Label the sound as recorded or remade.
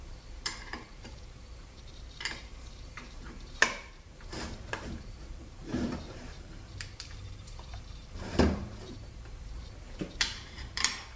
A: remade